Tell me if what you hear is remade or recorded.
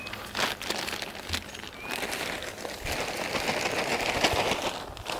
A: recorded